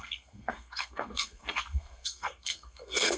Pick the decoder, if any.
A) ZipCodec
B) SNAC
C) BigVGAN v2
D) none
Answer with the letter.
B